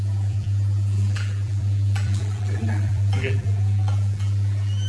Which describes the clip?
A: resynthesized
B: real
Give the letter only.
A